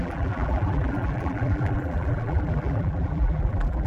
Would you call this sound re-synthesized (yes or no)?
yes